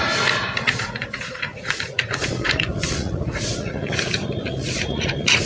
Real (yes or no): no